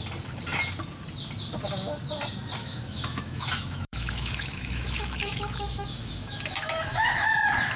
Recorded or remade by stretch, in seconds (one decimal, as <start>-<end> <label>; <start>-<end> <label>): 0.0-2.6 recorded; 2.6-7.3 remade; 7.3-7.8 recorded